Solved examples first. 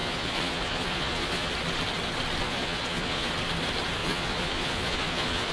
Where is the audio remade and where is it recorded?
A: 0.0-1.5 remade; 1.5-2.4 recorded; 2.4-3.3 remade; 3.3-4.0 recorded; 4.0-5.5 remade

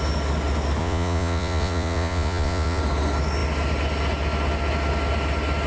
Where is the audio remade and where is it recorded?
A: 0.0-0.8 recorded; 0.8-2.8 remade; 2.8-5.7 recorded

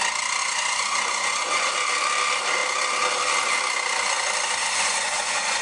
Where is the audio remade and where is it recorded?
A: 0.0-0.4 recorded; 0.4-1.7 remade; 1.7-4.6 recorded; 4.6-5.6 remade

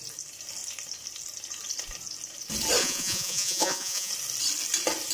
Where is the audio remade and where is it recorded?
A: 0.0-2.8 recorded; 2.8-4.1 remade; 4.1-5.1 recorded

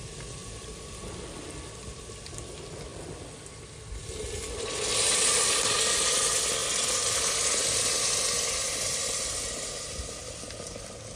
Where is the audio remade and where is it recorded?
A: 0.0-11.2 recorded

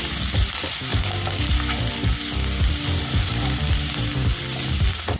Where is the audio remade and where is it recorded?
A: 0.0-5.2 recorded

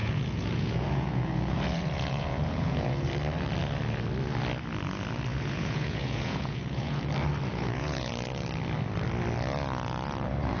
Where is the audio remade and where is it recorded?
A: 0.0-3.1 remade; 3.1-5.3 recorded; 5.3-7.0 remade; 7.0-7.5 recorded; 7.5-8.1 remade; 8.1-10.6 recorded